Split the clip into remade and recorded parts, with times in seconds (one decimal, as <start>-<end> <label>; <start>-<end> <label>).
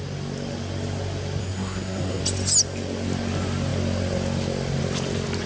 0.0-1.4 recorded; 1.4-2.2 remade; 2.2-5.5 recorded